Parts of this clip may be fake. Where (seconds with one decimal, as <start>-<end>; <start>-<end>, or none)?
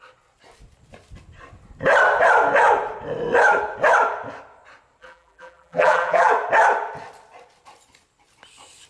5.0-6.3